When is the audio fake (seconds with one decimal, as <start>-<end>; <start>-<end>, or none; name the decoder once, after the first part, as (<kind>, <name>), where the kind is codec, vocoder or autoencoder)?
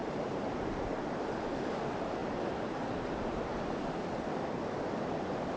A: 0.0-1.2 (vocoder, BigVGAN v2); 2.2-4.0